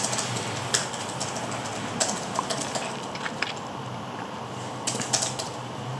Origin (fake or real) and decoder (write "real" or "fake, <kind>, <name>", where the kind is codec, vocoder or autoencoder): real